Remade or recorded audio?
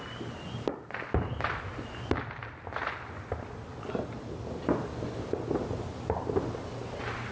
recorded